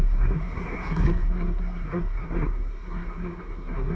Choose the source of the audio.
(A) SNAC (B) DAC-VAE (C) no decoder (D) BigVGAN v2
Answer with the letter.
A